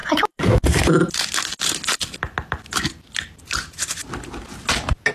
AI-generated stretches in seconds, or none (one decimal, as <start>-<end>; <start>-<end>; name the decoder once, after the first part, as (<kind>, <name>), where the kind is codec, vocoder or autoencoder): 0.0-1.0 (vocoder, BigVGAN v2)